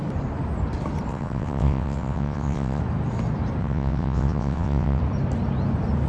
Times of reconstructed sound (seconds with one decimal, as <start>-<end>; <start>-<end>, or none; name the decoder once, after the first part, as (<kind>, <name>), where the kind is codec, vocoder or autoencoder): 1.1-2.8 (vocoder, WaveNeXt); 3.6-5.0